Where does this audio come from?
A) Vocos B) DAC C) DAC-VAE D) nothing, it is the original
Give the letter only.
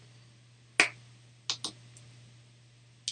D